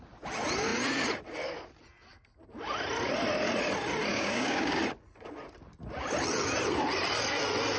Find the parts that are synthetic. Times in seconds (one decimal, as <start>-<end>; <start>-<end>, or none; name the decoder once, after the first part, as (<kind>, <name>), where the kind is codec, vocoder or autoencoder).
4.1-4.8 (codec, DAC)